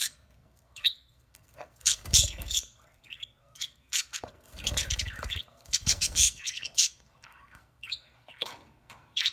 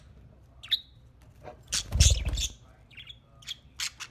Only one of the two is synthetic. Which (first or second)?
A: first